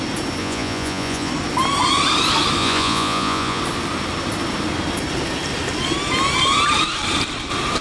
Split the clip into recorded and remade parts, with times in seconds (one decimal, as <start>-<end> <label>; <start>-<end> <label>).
0.0-0.4 recorded; 0.4-1.3 remade; 1.3-2.6 recorded; 2.6-3.6 remade; 3.6-7.8 recorded